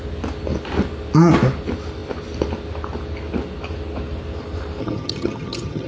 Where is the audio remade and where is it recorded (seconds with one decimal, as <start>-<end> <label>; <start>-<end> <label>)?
0.0-4.8 recorded; 4.8-5.9 remade